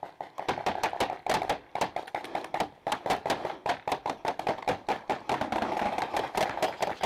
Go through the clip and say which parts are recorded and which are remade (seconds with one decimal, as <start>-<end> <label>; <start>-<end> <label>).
0.0-7.1 recorded